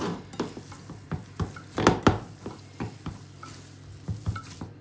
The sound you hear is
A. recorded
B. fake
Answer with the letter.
A